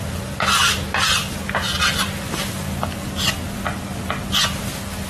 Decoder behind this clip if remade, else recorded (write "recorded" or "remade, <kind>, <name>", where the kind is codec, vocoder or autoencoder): recorded